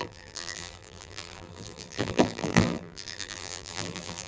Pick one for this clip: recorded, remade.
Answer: remade